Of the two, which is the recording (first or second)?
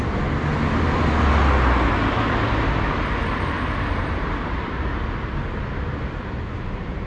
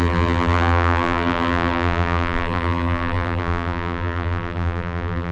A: first